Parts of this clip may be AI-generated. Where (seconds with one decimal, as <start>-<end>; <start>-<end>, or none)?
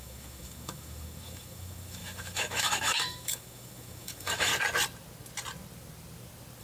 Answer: 0.0-4.5